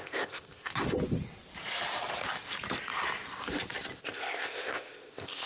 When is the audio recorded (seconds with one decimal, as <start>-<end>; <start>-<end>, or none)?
0.7-4.0